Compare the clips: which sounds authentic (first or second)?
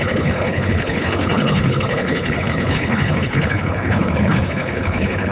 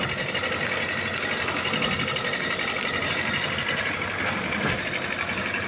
second